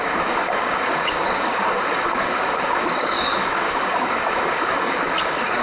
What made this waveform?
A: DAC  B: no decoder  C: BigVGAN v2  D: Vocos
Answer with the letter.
A